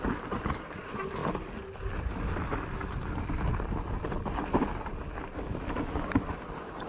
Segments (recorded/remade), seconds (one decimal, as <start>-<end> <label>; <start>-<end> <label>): 0.0-6.9 recorded